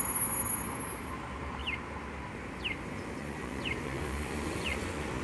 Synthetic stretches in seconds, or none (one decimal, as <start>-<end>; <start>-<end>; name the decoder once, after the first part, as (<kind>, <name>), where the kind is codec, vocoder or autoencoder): 3.2-5.2 (vocoder, Vocos)